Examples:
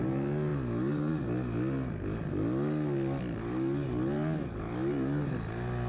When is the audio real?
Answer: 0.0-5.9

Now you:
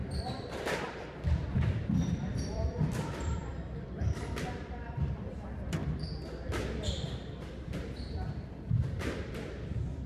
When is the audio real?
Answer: 5.8-9.2

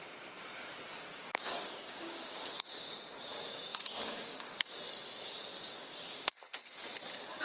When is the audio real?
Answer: 0.0-0.9; 3.3-3.7; 4.9-5.5; 6.3-7.4